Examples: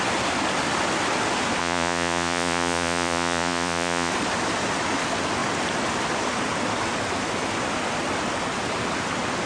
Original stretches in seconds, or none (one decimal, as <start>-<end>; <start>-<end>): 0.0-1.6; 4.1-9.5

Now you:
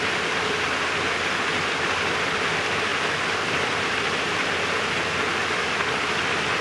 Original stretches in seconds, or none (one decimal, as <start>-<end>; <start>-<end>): 0.0-2.9; 4.2-5.4

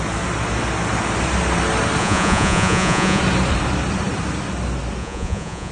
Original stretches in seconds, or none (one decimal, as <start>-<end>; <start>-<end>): 0.0-2.0; 3.2-5.0